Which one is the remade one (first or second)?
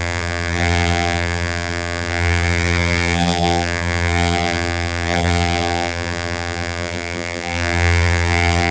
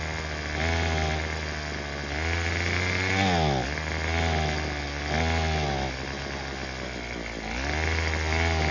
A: first